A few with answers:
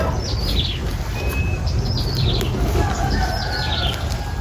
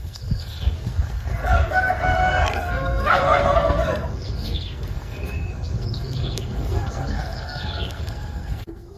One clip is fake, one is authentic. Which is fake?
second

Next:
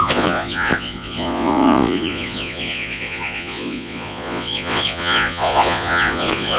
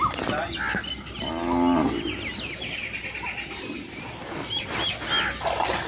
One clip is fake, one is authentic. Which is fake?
first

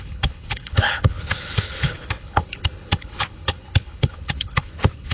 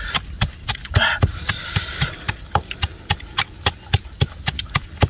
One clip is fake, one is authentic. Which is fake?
first